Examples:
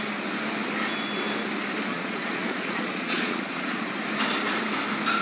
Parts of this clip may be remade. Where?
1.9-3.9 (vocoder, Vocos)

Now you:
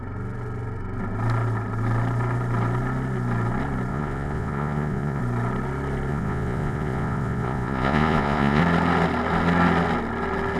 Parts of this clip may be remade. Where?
3.9-5.2 (vocoder, Vocos); 6.1-8.6